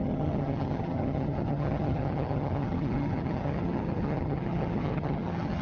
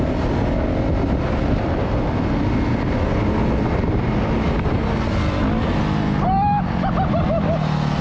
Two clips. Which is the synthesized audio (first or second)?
first